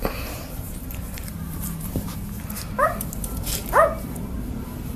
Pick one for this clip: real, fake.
fake